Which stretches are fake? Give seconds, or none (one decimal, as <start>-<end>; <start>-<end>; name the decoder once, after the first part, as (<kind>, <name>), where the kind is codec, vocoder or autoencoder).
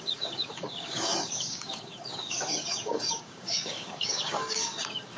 0.0-5.2 (codec, DAC)